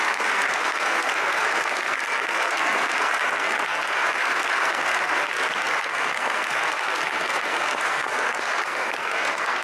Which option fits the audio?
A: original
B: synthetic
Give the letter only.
B